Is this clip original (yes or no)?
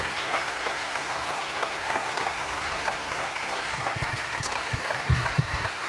no